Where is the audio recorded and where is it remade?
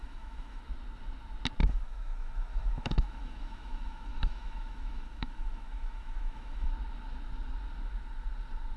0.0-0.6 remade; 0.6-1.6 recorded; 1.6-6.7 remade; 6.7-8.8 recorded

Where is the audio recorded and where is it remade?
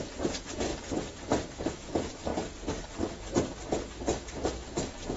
0.0-0.7 remade; 0.7-1.7 recorded; 1.7-2.3 remade; 2.3-5.2 recorded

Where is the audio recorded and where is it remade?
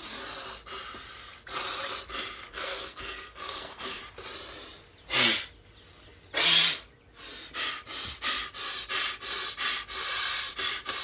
0.0-2.5 recorded; 2.5-4.0 remade; 4.0-11.0 recorded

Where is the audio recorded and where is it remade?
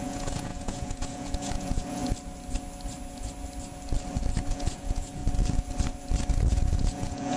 0.0-2.0 remade; 2.0-4.5 recorded; 4.5-5.2 remade; 5.2-6.3 recorded; 6.3-7.4 remade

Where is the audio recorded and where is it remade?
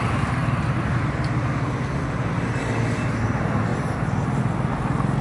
0.0-5.2 recorded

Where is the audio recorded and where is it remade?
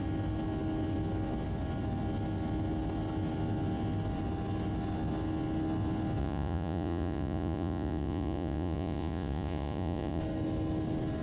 0.0-6.2 recorded; 6.2-10.2 remade; 10.2-11.2 recorded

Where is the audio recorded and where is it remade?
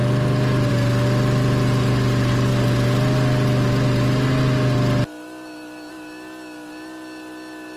0.0-7.8 recorded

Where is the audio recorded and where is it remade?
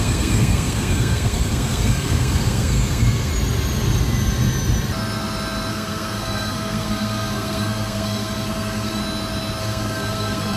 0.0-3.3 remade; 3.3-5.7 recorded; 5.7-9.0 remade; 9.0-9.6 recorded; 9.6-10.6 remade